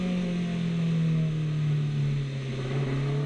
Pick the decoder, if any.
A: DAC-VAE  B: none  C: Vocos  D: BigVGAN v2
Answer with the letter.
B